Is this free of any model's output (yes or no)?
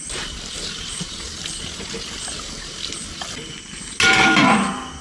yes